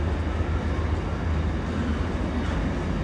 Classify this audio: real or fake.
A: real